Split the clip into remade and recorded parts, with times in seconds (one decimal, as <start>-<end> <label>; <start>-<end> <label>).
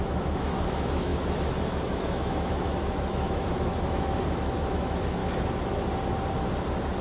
0.0-5.2 remade; 5.2-7.0 recorded